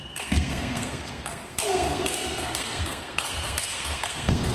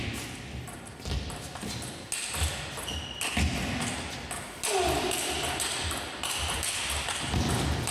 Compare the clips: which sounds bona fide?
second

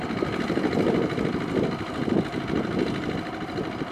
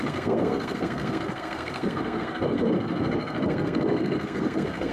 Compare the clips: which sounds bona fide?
first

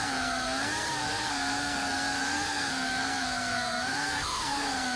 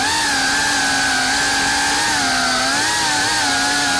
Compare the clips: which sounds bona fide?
second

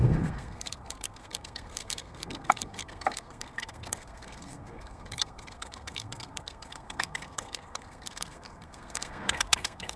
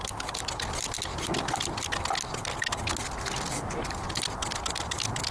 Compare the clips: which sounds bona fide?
second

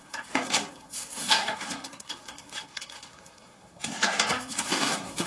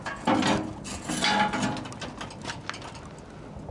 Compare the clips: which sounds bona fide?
second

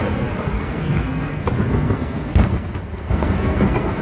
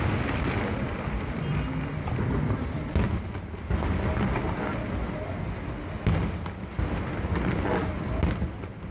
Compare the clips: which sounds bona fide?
second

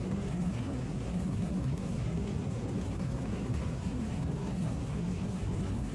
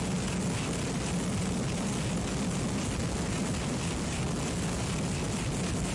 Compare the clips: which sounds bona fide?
second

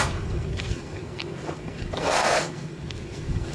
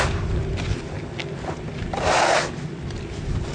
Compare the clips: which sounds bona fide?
second